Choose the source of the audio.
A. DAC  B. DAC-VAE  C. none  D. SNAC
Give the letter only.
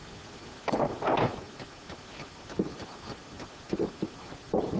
C